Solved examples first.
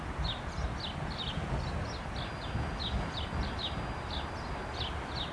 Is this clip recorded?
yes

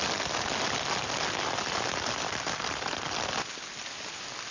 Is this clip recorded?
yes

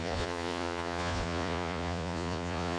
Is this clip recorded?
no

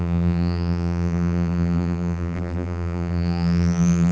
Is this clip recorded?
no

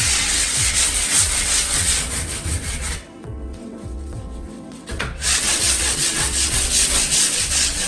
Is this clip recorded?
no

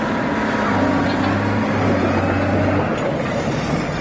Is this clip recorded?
yes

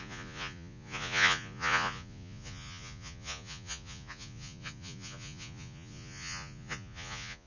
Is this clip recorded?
no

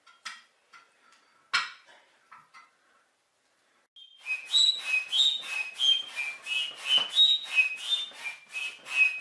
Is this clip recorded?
yes